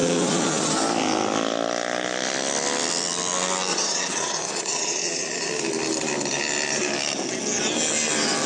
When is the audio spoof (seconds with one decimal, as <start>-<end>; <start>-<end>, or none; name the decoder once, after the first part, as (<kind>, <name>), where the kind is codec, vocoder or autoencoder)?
0.0-0.7 (vocoder, Vocos); 3.7-5.5